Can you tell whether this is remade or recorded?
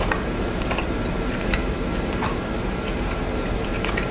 remade